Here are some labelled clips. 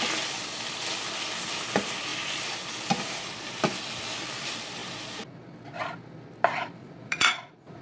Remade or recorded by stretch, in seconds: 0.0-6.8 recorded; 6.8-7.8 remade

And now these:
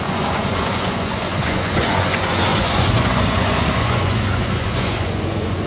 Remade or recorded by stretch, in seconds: 0.0-5.7 remade

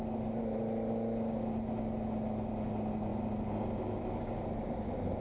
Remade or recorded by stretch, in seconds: 0.0-5.2 recorded

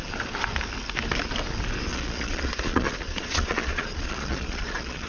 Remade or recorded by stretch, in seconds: 0.0-1.9 recorded; 1.9-5.1 remade

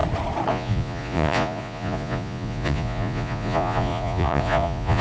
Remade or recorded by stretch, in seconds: 0.0-0.5 recorded; 0.5-5.0 remade

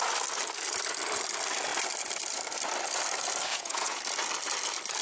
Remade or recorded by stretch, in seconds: 0.0-3.5 recorded; 3.5-4.0 remade; 4.0-5.0 recorded

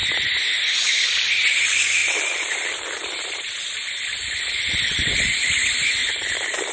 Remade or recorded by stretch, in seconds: 0.0-6.7 recorded